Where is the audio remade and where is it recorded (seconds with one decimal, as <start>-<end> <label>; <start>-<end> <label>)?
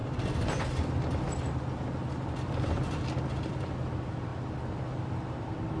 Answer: 0.0-5.8 recorded